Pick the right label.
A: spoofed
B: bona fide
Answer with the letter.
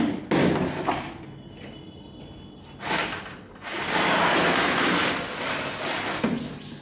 B